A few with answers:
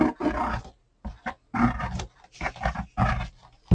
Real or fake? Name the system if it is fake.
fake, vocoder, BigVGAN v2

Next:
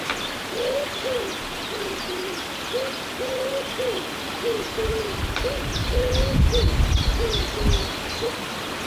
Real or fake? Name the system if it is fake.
fake, vocoder, BigVGAN v2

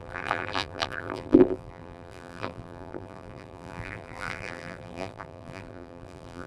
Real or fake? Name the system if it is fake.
fake, vocoder, BigVGAN v2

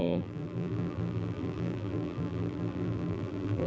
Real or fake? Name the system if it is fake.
fake, vocoder, BigVGAN v2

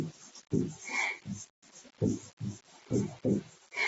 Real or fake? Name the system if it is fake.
real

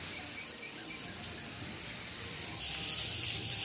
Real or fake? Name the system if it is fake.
fake, vocoder, BigVGAN v2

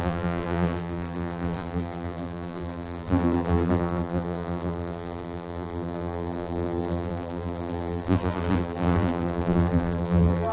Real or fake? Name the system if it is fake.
fake, vocoder, BigVGAN v2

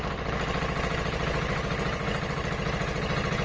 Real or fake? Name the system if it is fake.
fake, vocoder, BigVGAN v2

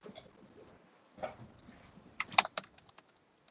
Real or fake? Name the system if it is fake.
real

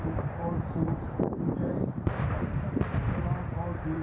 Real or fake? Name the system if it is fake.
fake, vocoder, BigVGAN v2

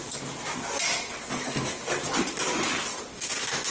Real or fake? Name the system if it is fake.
real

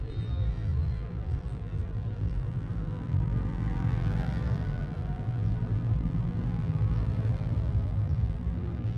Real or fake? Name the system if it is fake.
fake, vocoder, BigVGAN v2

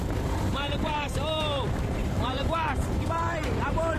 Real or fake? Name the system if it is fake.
fake, vocoder, BigVGAN v2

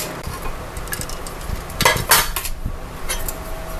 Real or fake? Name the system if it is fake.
real